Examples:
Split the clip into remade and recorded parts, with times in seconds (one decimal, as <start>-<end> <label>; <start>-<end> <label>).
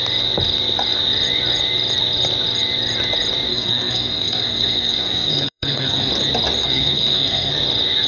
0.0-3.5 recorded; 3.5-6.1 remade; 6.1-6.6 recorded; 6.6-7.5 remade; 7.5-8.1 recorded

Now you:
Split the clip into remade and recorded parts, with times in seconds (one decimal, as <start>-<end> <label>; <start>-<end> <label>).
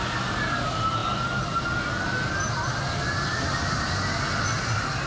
0.0-5.1 recorded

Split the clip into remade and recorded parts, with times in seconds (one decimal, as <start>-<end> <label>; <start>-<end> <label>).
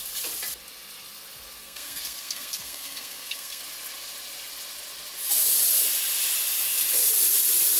0.0-1.6 recorded; 1.6-3.6 remade; 3.6-7.8 recorded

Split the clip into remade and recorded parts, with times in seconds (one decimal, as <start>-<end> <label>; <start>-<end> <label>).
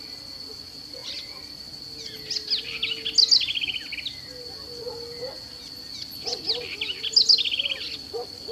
0.0-8.5 recorded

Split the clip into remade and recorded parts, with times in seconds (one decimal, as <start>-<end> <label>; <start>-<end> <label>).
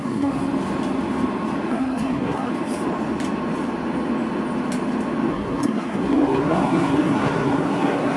0.0-0.4 remade; 0.4-1.7 recorded; 1.7-2.5 remade; 2.5-5.3 recorded; 5.3-8.2 remade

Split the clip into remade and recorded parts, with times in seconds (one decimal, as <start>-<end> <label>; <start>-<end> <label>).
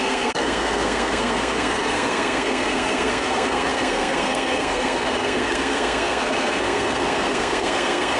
0.0-8.2 remade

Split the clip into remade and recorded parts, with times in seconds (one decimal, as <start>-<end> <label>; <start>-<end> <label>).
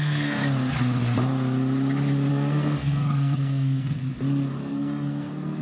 0.0-0.4 remade; 0.4-2.3 recorded; 2.3-4.0 remade; 4.0-4.6 recorded; 4.6-5.6 remade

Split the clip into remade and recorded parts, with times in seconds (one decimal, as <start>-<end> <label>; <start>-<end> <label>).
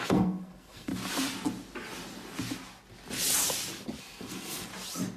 0.0-0.9 remade; 0.9-4.0 recorded; 4.0-4.7 remade; 4.7-5.2 recorded